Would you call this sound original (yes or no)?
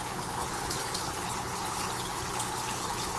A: no